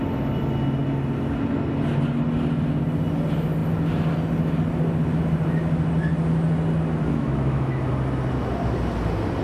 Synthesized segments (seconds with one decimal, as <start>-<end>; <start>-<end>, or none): 7.1-7.9